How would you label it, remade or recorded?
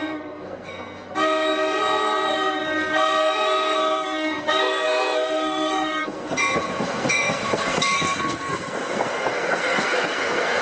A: remade